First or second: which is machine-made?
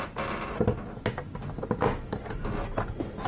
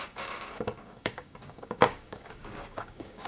second